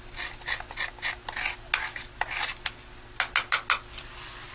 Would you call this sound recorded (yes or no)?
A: yes